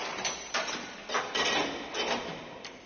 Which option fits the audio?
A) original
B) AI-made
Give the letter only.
A